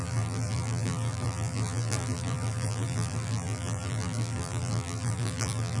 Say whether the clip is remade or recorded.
remade